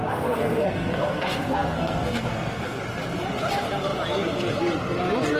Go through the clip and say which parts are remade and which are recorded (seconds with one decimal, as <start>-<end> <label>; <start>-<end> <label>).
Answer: 0.0-2.8 remade; 2.8-5.4 recorded